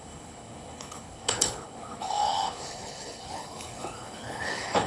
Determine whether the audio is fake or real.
fake